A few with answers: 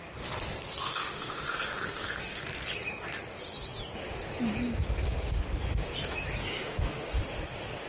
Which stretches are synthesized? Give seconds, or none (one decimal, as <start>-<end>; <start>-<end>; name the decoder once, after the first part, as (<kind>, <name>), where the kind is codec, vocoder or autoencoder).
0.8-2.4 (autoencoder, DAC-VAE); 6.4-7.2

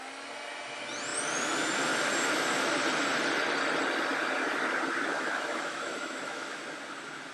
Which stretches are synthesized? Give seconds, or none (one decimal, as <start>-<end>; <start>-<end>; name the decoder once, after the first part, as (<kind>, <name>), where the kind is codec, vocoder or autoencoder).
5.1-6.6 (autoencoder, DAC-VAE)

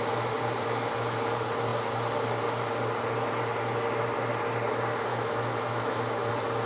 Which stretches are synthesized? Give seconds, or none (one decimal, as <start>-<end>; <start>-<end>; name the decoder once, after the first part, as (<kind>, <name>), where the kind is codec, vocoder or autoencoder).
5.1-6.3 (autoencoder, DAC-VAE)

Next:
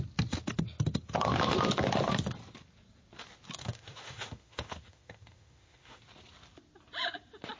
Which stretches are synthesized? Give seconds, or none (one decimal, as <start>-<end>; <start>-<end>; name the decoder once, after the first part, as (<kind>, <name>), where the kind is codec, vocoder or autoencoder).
3.6-6.0 (autoencoder, DAC-VAE)

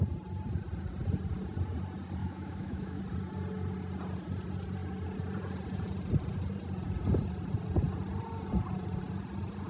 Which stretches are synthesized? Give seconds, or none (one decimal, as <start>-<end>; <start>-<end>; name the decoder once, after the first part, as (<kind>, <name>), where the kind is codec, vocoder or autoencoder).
2.2-3.0 (autoencoder, DAC-VAE)